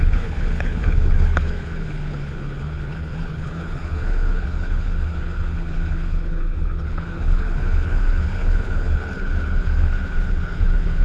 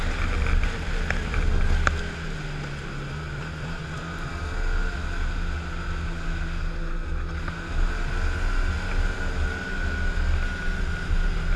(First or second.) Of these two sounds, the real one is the second